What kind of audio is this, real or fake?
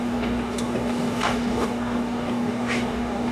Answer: fake